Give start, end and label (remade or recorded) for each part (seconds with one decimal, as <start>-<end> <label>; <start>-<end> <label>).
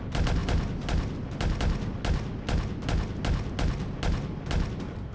0.0-5.1 recorded